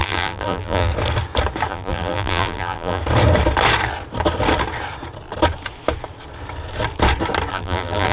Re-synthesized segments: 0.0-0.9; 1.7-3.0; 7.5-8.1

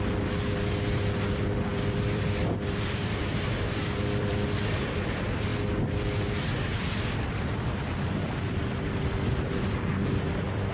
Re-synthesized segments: 1.7-4.6

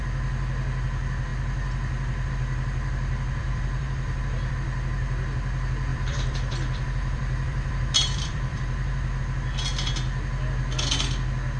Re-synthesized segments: 3.4-4.5; 5.9-9.2